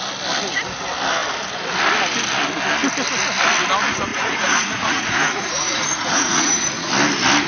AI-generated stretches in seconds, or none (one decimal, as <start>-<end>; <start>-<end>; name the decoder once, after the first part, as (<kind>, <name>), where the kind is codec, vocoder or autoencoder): 4.1-6.9 (vocoder, Vocos)